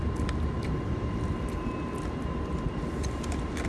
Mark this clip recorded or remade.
recorded